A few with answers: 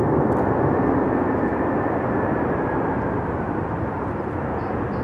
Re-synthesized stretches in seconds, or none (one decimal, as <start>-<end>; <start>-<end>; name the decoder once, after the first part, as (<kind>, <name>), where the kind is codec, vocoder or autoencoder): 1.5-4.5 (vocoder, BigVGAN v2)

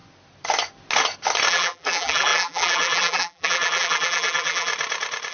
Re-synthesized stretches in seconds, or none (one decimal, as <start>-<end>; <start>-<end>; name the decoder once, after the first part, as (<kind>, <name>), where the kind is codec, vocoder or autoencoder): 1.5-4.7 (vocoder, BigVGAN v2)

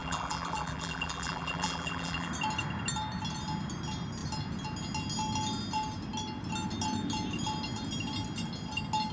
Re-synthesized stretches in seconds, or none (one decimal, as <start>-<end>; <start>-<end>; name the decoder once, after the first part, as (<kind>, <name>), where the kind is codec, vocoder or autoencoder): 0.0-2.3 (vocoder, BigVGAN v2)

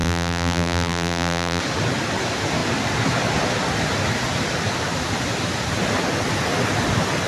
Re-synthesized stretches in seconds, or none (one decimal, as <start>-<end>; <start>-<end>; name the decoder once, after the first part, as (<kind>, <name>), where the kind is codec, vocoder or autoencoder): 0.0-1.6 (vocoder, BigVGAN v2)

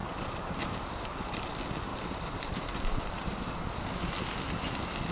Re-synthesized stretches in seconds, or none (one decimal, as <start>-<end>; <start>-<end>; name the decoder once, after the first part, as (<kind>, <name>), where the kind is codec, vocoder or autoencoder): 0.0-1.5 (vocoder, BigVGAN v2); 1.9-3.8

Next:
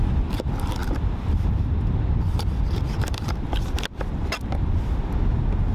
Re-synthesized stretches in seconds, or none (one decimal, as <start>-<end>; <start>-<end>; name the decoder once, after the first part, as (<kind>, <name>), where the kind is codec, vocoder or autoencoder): 0.8-3.6 (vocoder, BigVGAN v2)